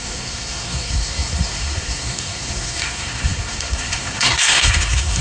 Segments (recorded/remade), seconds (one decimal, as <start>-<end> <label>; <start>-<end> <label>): 0.0-5.2 remade

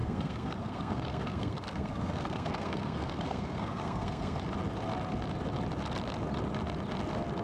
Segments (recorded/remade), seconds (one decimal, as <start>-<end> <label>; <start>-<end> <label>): 0.0-4.4 remade; 4.4-7.4 recorded

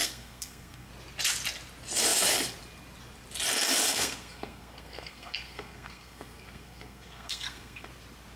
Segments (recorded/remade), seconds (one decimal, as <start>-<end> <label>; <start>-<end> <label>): 0.0-0.9 remade; 0.9-3.9 recorded; 3.9-7.9 remade; 7.9-8.4 recorded

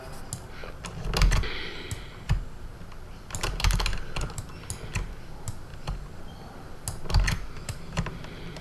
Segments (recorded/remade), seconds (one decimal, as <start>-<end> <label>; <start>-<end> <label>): 0.0-8.6 recorded

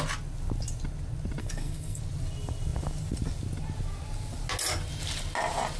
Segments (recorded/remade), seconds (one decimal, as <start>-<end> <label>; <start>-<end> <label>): 0.0-1.4 recorded; 1.4-2.0 remade; 2.0-5.8 recorded

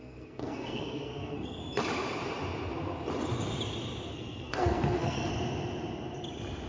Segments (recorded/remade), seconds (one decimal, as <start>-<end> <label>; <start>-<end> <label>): 0.0-1.6 remade; 1.6-4.1 recorded; 4.1-5.3 remade; 5.3-6.7 recorded